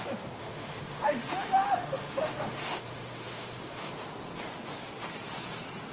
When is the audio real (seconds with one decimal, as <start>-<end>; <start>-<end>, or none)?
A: 0.0-0.4; 3.9-5.9